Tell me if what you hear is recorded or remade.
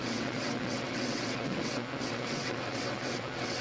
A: remade